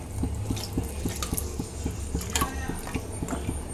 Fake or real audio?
real